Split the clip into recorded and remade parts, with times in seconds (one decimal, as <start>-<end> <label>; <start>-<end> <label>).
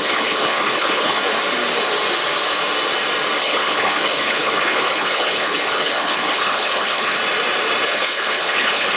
0.0-1.2 remade; 1.2-3.4 recorded; 3.4-7.2 remade; 7.2-7.9 recorded; 7.9-9.0 remade